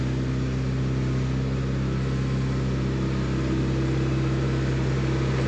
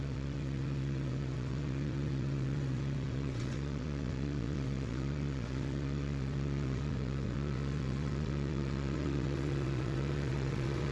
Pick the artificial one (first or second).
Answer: second